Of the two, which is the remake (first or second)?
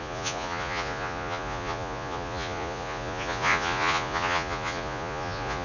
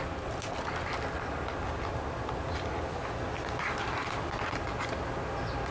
first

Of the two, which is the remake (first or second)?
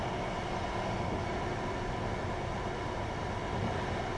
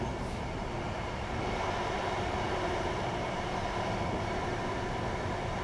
second